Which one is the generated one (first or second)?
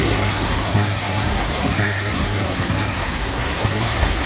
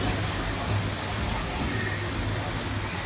first